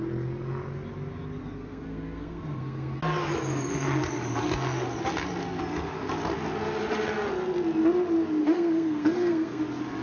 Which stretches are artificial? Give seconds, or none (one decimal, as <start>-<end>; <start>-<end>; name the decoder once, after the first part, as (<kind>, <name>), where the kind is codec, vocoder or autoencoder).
1.4-3.0 (codec, SNAC); 8.4-9.6